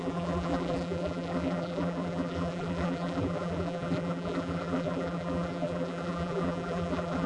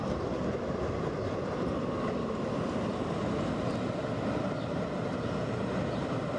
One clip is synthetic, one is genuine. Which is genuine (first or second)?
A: second